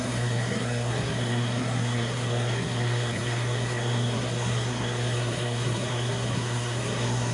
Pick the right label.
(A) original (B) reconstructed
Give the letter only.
B